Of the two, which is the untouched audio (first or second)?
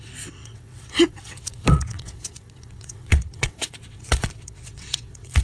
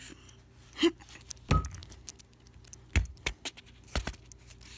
second